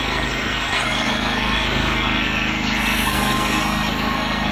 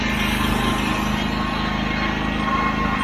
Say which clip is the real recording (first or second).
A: second